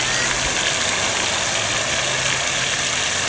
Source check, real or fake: real